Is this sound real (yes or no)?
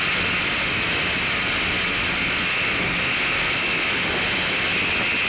yes